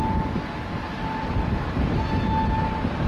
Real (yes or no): yes